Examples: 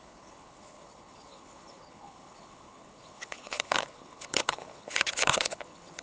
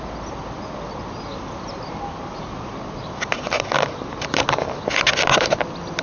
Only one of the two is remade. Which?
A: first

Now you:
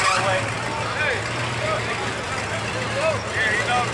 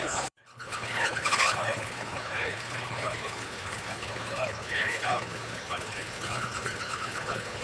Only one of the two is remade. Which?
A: second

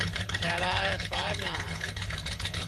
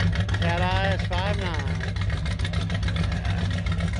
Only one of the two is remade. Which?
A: first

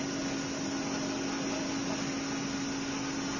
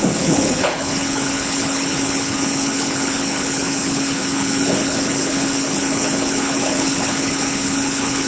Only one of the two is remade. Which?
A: second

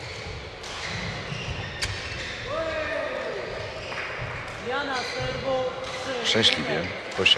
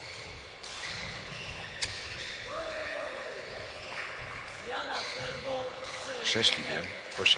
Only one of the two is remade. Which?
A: second